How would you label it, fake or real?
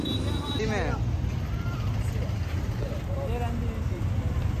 real